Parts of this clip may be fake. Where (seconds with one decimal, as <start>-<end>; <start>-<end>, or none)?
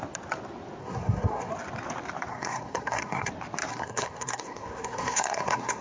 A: 0.8-1.5; 2.3-3.3; 3.7-5.8